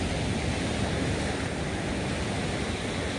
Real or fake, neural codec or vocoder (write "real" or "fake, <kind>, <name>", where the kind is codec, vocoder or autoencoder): real